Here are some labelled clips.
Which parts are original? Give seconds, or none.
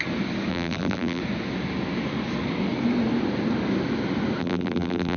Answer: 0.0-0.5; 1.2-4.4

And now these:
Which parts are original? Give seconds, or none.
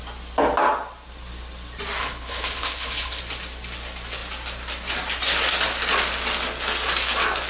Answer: 0.0-2.0; 3.2-7.5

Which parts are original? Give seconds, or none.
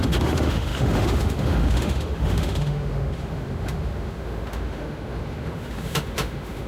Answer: none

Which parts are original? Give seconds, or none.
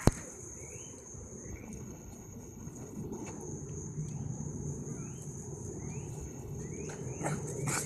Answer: 0.0-1.5; 3.3-6.1; 6.6-7.9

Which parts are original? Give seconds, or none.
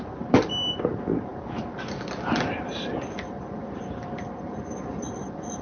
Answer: 0.0-5.6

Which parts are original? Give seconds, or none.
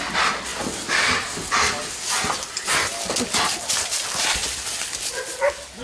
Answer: 0.0-5.8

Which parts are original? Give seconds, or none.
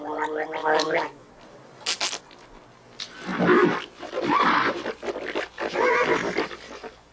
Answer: 0.0-0.6; 1.3-7.1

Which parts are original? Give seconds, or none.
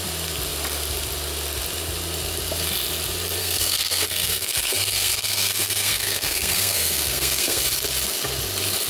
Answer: 0.0-3.4; 7.6-8.9